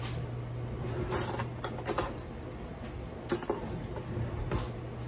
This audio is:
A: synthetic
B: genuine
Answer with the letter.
B